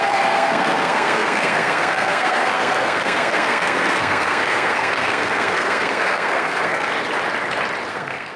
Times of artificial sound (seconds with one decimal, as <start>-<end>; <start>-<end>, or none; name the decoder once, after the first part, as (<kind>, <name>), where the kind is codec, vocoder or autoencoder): 0.0-6.9 (codec, SNAC); 7.9-8.4